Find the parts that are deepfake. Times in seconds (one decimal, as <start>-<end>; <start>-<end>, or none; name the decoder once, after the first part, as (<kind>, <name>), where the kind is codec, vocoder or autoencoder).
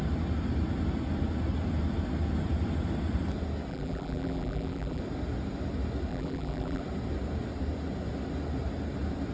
3.7-5.0 (vocoder, BigVGAN v2); 6.1-6.8